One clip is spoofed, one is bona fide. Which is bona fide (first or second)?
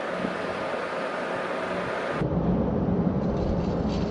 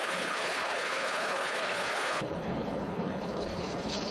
first